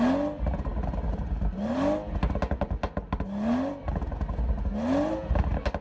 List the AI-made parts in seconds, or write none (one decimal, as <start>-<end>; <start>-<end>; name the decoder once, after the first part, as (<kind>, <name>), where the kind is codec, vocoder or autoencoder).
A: none